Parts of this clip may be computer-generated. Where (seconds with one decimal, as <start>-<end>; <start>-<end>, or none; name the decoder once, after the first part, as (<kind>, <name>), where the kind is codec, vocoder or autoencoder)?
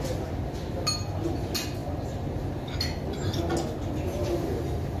none